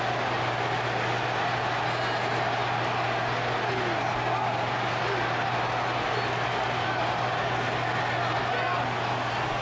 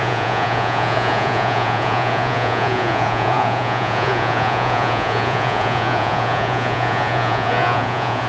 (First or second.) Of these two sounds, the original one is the first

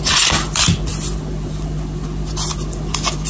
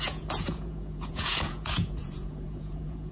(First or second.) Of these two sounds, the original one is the first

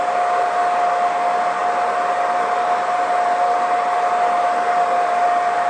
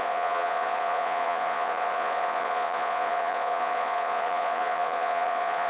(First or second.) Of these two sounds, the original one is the first